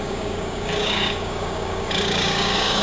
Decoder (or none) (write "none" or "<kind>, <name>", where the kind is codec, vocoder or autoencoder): codec, DAC